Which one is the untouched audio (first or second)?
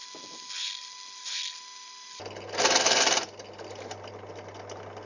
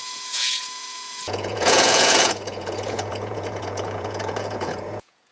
first